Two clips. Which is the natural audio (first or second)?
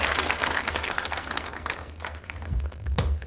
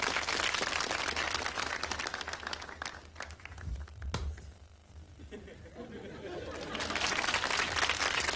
second